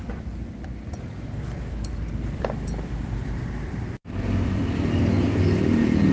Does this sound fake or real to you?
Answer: fake